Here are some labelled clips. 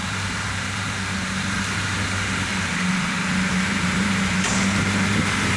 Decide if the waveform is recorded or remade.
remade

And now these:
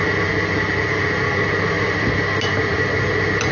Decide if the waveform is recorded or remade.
recorded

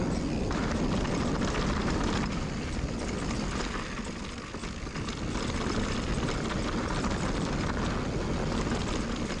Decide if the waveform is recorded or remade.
recorded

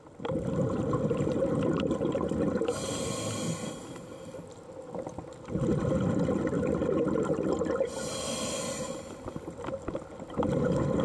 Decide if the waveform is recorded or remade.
recorded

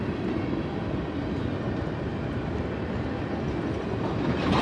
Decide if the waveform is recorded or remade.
recorded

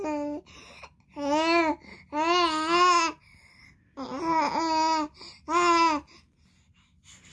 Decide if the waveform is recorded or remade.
recorded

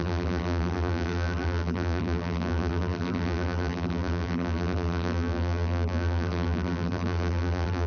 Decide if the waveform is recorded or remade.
remade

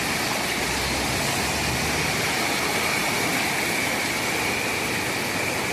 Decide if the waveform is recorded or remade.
recorded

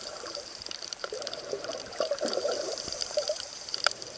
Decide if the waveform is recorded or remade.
remade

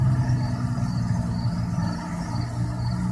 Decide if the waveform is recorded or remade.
recorded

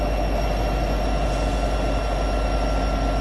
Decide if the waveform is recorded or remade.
recorded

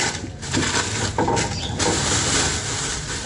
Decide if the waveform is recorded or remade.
remade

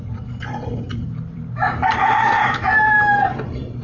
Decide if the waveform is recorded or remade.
remade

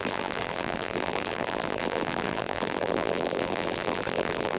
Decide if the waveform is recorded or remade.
remade